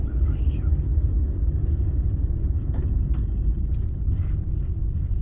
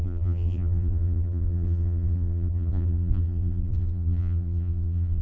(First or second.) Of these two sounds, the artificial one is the second